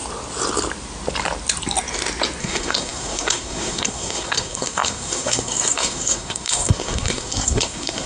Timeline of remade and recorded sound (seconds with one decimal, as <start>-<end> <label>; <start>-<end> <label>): 0.0-2.4 recorded; 2.4-8.1 remade